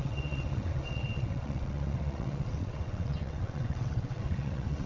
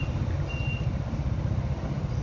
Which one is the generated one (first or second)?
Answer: first